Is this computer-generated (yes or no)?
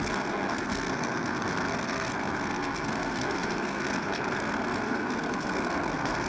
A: yes